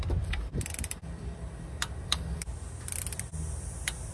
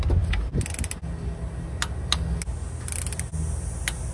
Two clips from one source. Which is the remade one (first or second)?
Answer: first